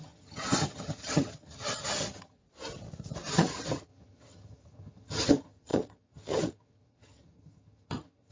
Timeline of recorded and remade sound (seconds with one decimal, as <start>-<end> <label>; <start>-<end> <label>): 0.0-2.4 remade; 2.4-3.3 recorded; 3.3-8.3 remade

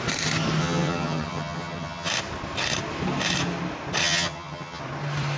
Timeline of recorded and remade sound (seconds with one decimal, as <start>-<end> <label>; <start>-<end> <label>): 0.0-0.6 recorded; 0.6-2.1 remade; 2.1-4.0 recorded; 4.0-4.8 remade; 4.8-5.4 recorded

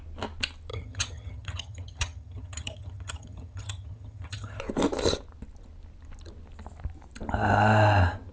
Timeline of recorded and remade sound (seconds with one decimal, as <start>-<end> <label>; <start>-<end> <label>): 0.0-0.7 recorded; 0.7-4.6 remade; 4.6-8.3 recorded

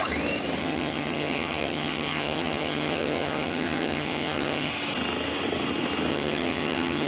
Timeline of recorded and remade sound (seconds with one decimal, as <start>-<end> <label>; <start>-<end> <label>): 0.0-0.6 recorded; 0.6-4.7 remade; 4.7-6.1 recorded; 6.1-7.1 remade

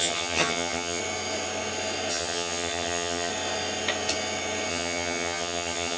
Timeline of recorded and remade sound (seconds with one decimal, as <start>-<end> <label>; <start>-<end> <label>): 0.0-1.0 remade; 1.0-2.1 recorded; 2.1-3.3 remade; 3.3-4.7 recorded; 4.7-6.0 remade

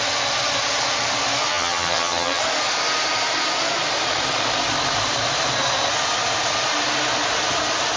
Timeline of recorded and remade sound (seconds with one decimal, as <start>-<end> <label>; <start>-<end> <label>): 0.0-1.5 recorded; 1.5-2.4 remade; 2.4-8.0 recorded

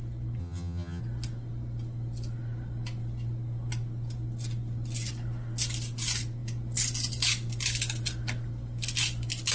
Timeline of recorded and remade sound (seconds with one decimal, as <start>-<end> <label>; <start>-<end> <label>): 0.0-0.4 recorded; 0.4-1.0 remade; 1.0-9.5 recorded

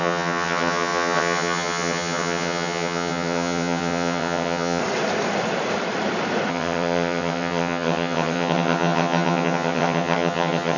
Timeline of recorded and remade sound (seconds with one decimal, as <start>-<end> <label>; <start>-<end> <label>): 0.0-4.8 remade; 4.8-6.5 recorded; 6.5-10.8 remade